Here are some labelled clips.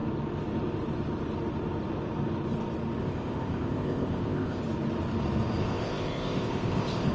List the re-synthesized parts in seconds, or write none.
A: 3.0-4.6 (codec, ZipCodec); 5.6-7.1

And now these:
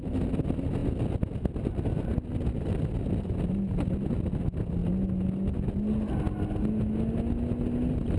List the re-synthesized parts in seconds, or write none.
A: none

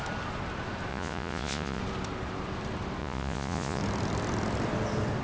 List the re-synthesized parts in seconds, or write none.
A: 0.9-1.8 (vocoder, Vocos); 3.0-3.8

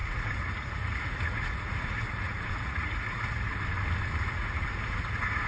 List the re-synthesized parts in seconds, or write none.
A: 0.0-3.5 (vocoder, Vocos); 4.2-5.5

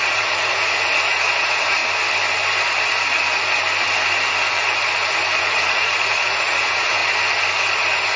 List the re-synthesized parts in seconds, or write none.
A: 0.0-1.8 (vocoder, Vocos); 5.4-7.0

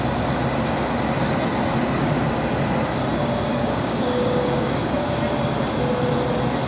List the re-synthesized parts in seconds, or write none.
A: 2.0-2.5 (codec, DAC); 3.5-5.2